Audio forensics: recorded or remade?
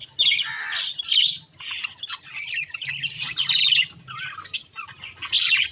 recorded